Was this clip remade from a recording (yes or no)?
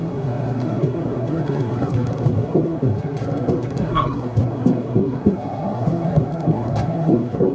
yes